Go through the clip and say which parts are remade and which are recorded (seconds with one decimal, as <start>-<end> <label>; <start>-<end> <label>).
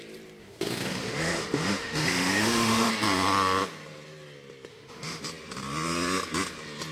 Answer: 0.0-0.4 recorded; 0.4-2.9 remade; 2.9-4.7 recorded; 4.7-5.2 remade; 5.2-6.9 recorded